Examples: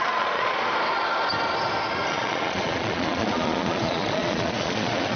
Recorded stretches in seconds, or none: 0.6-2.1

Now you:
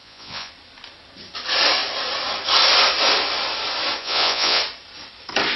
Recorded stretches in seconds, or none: 0.5-4.0; 4.6-5.6